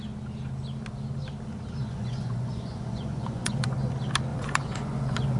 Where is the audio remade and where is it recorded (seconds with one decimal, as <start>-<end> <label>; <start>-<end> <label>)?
0.0-1.8 recorded; 1.8-3.9 remade; 3.9-4.3 recorded; 4.3-5.4 remade